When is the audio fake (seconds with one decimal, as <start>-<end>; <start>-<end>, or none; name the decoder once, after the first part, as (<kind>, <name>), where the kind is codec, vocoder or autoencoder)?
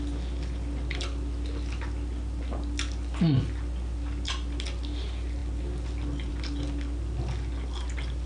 none